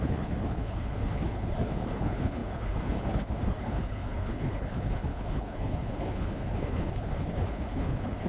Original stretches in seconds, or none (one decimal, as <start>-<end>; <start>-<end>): none